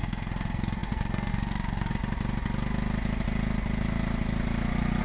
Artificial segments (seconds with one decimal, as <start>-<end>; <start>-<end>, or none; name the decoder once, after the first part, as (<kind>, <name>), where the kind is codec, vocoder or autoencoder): 0.0-1.9 (codec, SNAC)